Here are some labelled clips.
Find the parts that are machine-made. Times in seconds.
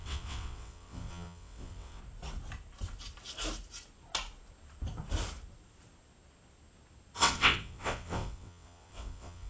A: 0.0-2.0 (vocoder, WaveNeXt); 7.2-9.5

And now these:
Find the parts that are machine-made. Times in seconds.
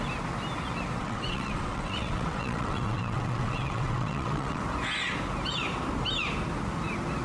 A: 1.0-4.6 (vocoder, WaveNeXt)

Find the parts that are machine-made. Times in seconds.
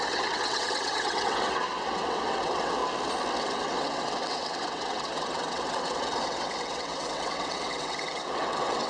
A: 0.0-2.8 (vocoder, WaveNeXt); 3.4-8.9